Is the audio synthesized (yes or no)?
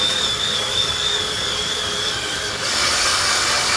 yes